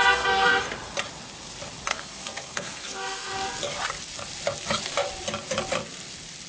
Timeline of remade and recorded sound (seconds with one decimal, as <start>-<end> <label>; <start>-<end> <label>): 0.0-0.6 remade; 0.6-1.9 recorded; 1.9-3.3 remade; 3.3-6.5 recorded